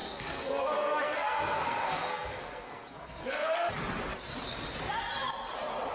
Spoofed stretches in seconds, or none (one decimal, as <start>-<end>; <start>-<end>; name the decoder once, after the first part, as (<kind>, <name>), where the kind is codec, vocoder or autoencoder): 0.0-3.5 (codec, SNAC)